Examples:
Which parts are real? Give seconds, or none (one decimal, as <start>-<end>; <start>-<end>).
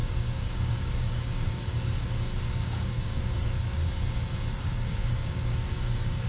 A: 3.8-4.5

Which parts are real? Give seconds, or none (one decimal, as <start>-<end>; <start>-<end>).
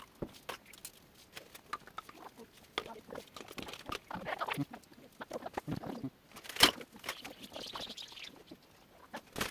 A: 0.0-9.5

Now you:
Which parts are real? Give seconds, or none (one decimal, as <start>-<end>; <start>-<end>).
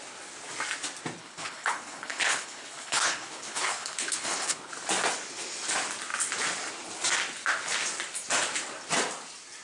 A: 0.0-1.2; 4.7-9.6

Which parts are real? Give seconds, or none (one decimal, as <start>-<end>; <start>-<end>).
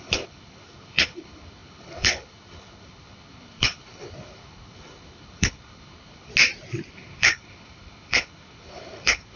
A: 6.3-6.9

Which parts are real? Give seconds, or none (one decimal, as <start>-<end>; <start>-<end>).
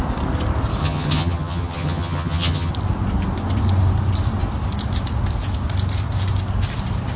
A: 0.0-0.8; 2.7-7.2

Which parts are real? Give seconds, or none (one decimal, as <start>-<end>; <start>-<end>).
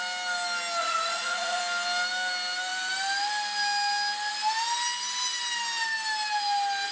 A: 0.0-0.8; 1.6-6.9